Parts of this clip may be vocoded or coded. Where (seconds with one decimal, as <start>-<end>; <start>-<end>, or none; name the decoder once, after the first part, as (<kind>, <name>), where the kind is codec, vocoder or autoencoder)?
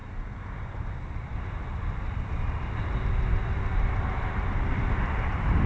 0.0-1.3 (vocoder, BigVGAN v2); 4.7-5.7